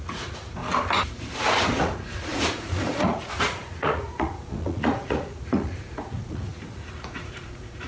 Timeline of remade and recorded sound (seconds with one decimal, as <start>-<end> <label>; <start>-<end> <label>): 0.0-0.6 remade; 0.6-1.8 recorded; 1.8-7.9 remade